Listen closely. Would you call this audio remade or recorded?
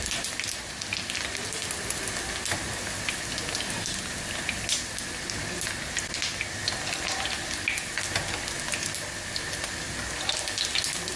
recorded